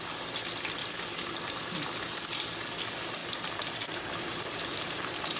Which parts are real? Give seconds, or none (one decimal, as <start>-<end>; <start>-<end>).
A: 0.0-0.8; 1.6-3.2